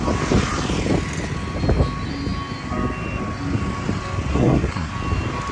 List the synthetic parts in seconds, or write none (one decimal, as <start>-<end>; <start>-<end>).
4.3-4.9